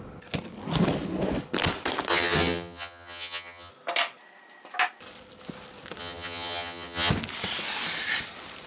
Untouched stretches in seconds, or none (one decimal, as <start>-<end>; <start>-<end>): 0.0-2.1; 3.7-6.0; 7.1-8.7